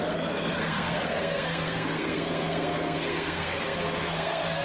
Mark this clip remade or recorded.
remade